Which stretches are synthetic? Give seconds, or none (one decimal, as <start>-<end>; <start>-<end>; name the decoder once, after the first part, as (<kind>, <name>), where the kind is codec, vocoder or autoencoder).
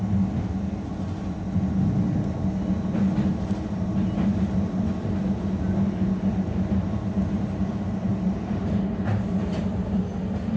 8.1-10.0 (vocoder, BigVGAN v2)